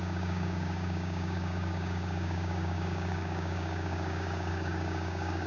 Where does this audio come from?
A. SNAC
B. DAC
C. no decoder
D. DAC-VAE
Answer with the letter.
B